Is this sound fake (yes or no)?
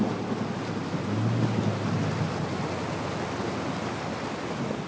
no